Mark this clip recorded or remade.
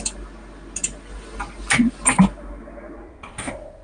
recorded